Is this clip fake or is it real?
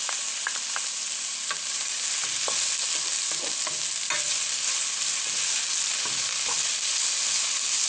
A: real